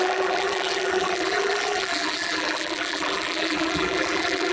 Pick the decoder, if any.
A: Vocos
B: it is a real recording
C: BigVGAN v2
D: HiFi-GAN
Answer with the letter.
C